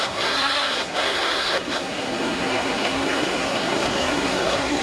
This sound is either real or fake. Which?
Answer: fake